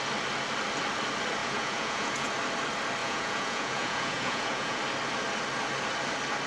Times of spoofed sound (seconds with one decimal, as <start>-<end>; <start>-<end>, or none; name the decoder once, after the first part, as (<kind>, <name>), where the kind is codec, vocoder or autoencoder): 1.4-2.3 (vocoder, Vocos); 3.0-4.8